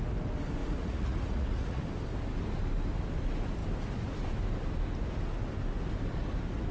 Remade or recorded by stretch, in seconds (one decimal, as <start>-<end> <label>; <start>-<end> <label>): 0.0-0.6 recorded; 0.6-1.8 remade; 1.8-6.7 recorded